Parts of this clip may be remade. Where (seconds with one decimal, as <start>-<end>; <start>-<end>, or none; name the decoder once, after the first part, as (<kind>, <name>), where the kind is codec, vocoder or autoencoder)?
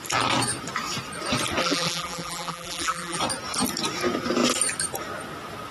1.6-3.2 (vocoder, BigVGAN v2)